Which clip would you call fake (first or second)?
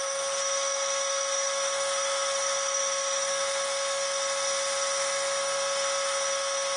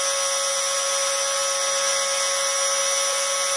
first